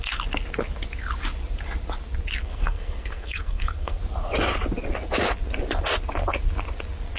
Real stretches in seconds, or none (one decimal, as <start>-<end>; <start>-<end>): 0.0-2.4; 4.0-7.2